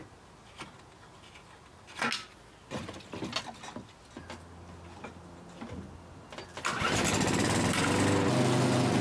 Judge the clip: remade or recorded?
recorded